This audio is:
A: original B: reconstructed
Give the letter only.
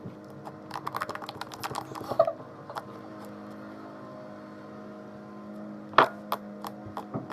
A